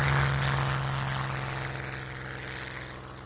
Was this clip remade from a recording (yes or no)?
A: no